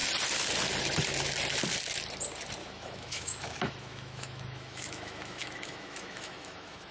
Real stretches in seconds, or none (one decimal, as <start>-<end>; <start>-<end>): 0.0-2.6